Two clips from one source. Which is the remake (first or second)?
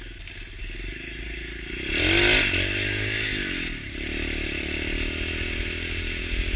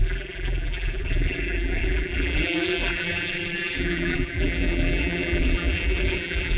second